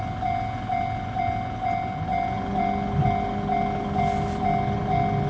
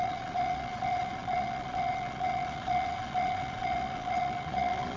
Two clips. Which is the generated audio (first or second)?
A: second